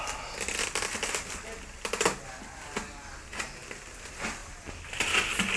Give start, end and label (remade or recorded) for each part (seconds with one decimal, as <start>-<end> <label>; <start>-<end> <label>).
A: 0.0-5.6 recorded